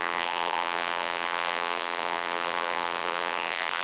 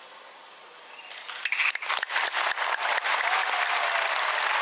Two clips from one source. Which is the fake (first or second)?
first